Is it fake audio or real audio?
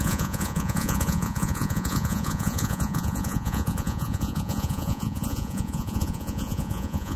fake